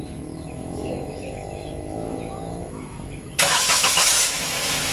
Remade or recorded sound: remade